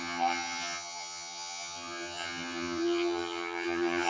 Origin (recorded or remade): remade